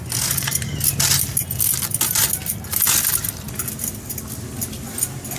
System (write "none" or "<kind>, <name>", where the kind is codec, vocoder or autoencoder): none